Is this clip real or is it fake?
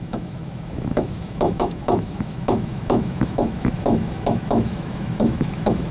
fake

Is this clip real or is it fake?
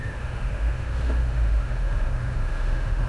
fake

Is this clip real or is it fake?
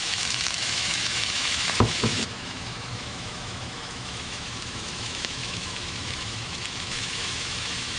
fake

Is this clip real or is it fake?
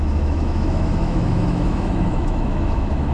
fake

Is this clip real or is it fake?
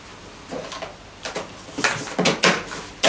real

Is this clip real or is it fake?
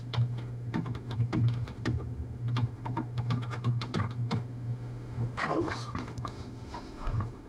fake